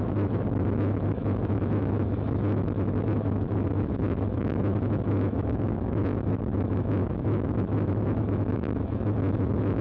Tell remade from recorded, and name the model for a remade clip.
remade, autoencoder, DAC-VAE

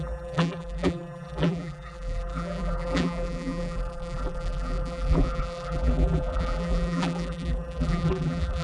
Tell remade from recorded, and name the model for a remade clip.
remade, vocoder, BigVGAN v2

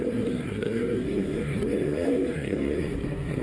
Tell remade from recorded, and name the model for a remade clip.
remade, codec, SNAC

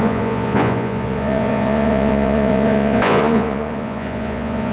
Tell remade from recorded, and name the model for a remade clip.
remade, vocoder, Vocos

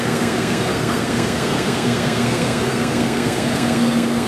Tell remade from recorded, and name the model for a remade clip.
remade, codec, SNAC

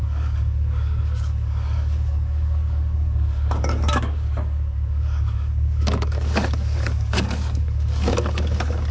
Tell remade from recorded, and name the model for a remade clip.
remade, codec, DAC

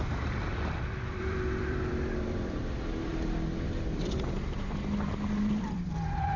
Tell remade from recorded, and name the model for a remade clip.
remade, vocoder, BigVGAN v2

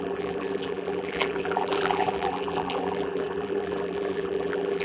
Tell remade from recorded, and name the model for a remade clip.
remade, vocoder, BigVGAN v2